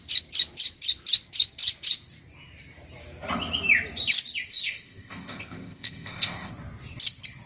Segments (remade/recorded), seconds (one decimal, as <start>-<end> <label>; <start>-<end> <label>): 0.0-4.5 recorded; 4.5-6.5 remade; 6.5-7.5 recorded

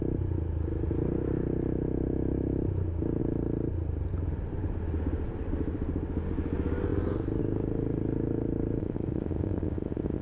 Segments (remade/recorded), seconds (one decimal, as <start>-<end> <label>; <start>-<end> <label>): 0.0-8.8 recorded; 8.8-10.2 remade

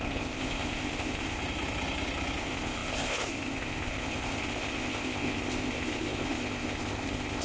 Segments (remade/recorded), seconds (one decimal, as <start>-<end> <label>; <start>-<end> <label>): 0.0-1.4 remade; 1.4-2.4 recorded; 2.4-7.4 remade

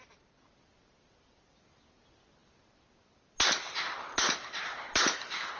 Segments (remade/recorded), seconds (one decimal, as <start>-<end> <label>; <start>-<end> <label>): 0.0-5.6 recorded

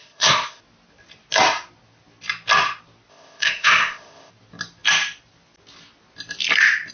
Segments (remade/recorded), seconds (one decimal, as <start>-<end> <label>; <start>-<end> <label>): 0.0-0.6 remade; 0.6-3.1 recorded; 3.1-4.3 remade; 4.3-6.9 recorded

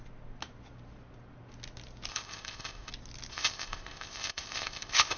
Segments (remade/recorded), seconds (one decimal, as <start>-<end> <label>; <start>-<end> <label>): 0.0-2.1 recorded; 2.1-2.9 remade; 2.9-3.3 recorded; 3.3-5.2 remade

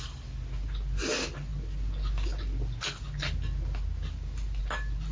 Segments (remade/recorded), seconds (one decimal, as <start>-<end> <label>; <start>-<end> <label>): 0.0-5.1 recorded